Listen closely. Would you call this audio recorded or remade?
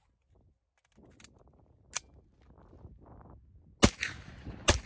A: recorded